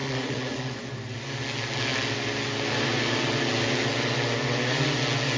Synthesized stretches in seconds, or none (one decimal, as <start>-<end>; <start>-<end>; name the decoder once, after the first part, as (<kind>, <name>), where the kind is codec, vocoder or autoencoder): 0.0-0.8 (vocoder, Vocos)